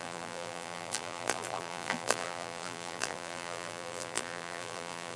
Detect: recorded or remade remade